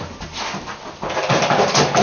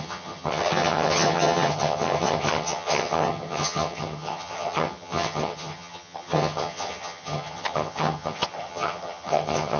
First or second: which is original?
first